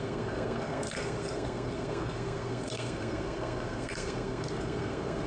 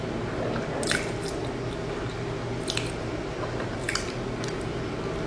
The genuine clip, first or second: second